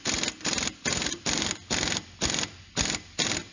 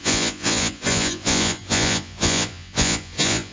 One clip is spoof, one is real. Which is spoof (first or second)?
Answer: second